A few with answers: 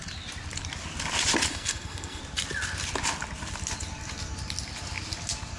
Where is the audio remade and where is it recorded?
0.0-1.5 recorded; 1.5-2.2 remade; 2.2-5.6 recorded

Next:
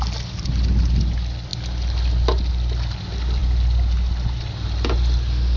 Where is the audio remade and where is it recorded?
0.0-5.6 recorded

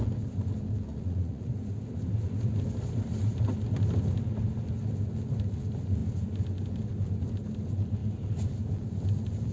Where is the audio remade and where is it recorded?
0.0-0.9 recorded; 0.9-1.5 remade; 1.5-9.5 recorded

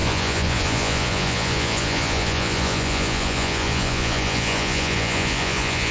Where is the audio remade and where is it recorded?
0.0-5.9 remade

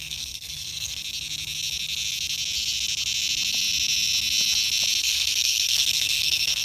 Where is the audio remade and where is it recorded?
0.0-1.0 remade; 1.0-5.0 recorded; 5.0-6.6 remade